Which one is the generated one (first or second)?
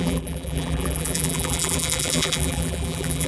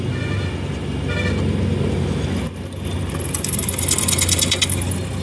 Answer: first